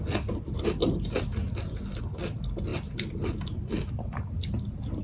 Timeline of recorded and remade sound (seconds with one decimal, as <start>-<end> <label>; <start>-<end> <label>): 0.0-1.4 remade; 1.4-2.0 recorded; 2.0-5.0 remade